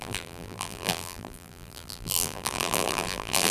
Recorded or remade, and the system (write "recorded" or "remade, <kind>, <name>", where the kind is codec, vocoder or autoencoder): remade, vocoder, BigVGAN v2